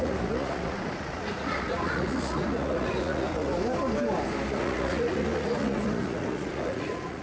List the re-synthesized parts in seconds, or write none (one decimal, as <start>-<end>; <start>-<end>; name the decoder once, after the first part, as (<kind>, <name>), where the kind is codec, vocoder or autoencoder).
0.0-3.5 (vocoder, Vocos); 4.5-7.2